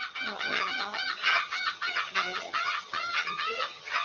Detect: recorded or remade remade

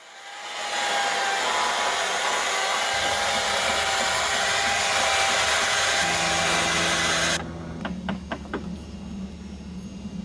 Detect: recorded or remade recorded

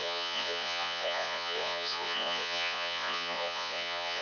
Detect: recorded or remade remade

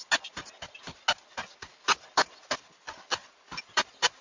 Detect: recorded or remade recorded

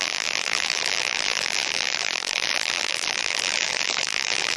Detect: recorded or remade remade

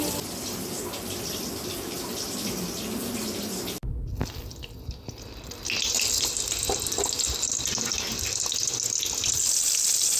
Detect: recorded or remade recorded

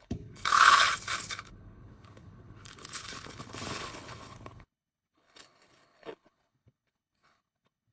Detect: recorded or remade remade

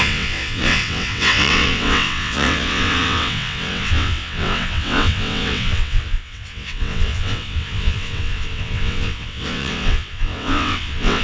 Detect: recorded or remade remade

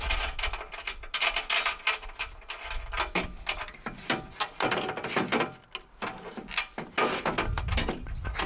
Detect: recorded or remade recorded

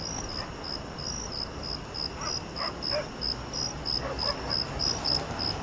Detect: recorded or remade recorded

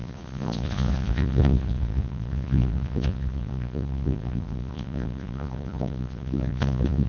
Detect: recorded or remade remade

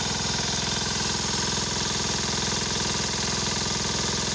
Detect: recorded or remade recorded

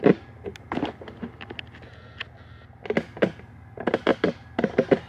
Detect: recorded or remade recorded